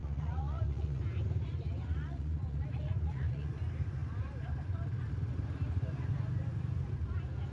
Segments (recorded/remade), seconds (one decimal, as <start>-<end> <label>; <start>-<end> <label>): 0.0-1.0 remade; 1.0-1.8 recorded; 1.8-3.6 remade; 3.6-7.5 recorded